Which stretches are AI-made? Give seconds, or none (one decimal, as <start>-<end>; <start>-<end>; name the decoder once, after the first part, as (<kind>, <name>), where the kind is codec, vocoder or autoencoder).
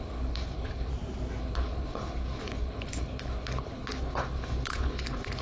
0.0-0.9 (codec, HILCodec); 1.4-5.4